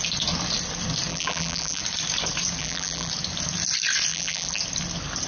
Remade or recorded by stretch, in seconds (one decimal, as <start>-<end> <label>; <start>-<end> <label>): 0.0-1.1 recorded; 1.1-1.8 remade; 1.8-2.6 recorded; 2.6-3.1 remade; 3.1-4.1 recorded; 4.1-4.6 remade; 4.6-5.3 recorded